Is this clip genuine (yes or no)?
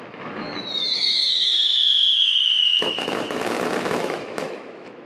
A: no